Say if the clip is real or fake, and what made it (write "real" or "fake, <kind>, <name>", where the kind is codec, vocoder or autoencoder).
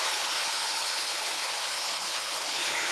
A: fake, codec, HILCodec